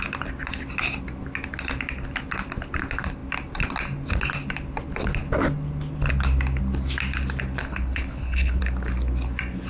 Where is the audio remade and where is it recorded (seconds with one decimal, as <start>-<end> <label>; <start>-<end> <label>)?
0.0-7.6 recorded; 7.6-8.6 remade; 8.6-9.7 recorded